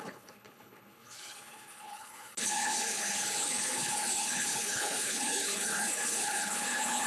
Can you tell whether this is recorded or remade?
remade